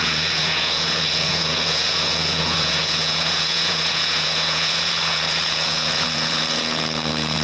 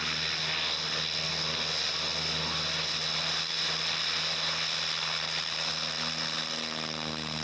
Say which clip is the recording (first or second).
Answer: second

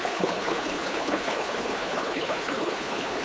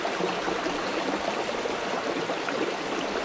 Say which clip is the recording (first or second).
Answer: second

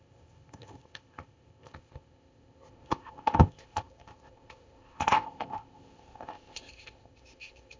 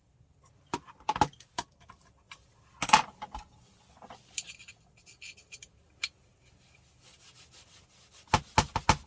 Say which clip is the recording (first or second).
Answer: second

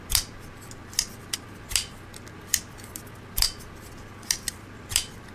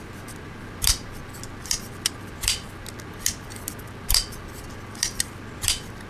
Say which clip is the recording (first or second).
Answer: first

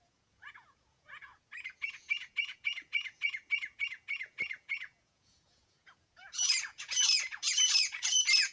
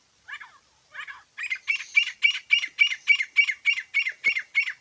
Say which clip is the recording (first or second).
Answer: second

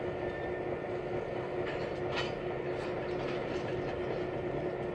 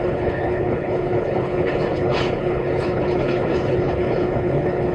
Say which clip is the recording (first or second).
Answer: first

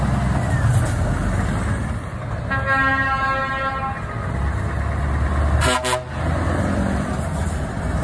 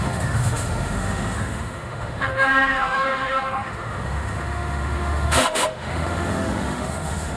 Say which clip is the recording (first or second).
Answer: first